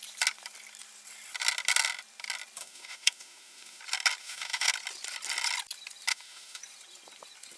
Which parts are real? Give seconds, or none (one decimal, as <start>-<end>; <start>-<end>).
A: 0.0-2.6; 3.8-4.2; 4.7-6.1; 6.6-7.6